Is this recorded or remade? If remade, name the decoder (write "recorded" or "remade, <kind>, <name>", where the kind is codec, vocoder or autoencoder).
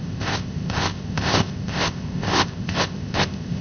remade, codec, ZipCodec